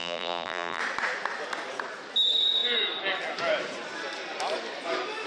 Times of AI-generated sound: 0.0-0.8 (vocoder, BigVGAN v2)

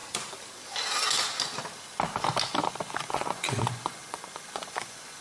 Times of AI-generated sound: 3.1-5.2 (vocoder, Vocos)

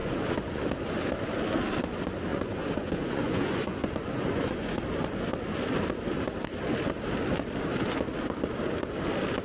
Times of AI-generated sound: 0.0-0.7 (vocoder, Vocos); 2.3-4.8

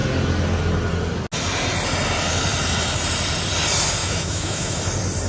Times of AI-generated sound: 4.0-4.8 (autoencoder, DAC-VAE)